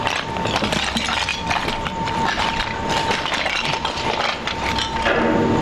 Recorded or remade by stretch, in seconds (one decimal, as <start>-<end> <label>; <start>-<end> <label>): 0.0-1.3 recorded; 1.3-4.7 remade; 4.7-5.6 recorded